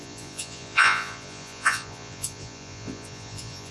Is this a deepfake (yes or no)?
yes